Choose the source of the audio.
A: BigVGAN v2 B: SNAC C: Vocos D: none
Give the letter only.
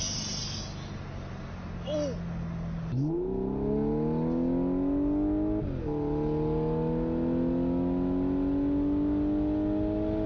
D